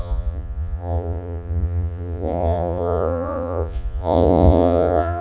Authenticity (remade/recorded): remade